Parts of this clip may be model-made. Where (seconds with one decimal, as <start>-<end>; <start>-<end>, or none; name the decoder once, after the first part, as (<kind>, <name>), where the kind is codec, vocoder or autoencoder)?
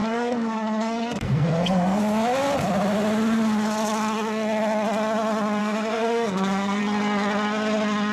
0.0-2.0 (codec, SNAC); 5.6-6.8